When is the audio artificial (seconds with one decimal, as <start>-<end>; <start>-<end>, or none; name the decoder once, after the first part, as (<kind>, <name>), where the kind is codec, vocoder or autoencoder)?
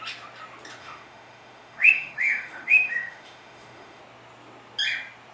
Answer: 0.8-4.0 (autoencoder, DAC-VAE)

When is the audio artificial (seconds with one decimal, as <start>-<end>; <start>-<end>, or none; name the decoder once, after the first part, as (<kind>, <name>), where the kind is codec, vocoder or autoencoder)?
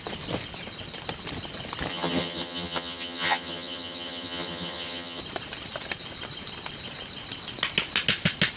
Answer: 1.9-5.2 (vocoder, HiFi-GAN)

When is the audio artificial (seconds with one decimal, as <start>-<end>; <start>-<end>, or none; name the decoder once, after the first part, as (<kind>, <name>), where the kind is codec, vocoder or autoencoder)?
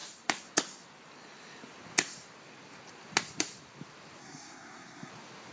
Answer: 4.2-5.1 (codec, SNAC)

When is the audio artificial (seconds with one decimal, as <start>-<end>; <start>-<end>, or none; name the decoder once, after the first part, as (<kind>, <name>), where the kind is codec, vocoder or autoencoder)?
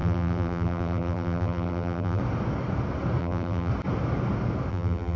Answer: 0.0-2.2 (vocoder, BigVGAN v2); 3.2-3.7; 4.7-5.2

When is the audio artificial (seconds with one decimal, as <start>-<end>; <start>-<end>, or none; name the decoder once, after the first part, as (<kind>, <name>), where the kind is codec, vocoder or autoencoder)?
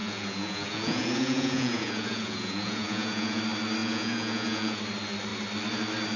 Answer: 0.0-3.4 (vocoder, Vocos); 3.8-4.8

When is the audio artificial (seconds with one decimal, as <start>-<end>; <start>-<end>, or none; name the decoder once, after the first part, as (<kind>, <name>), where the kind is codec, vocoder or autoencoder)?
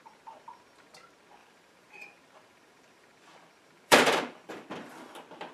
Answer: 1.4-4.7 (vocoder, BigVGAN v2)